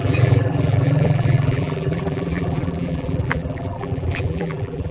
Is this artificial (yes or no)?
yes